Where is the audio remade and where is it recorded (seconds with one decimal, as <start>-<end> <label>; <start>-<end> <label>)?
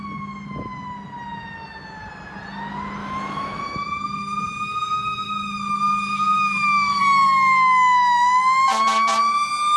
0.0-3.0 recorded; 3.0-7.0 remade; 7.0-9.8 recorded